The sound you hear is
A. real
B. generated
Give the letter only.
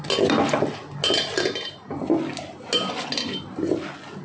A